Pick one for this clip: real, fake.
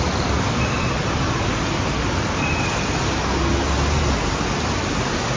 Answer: real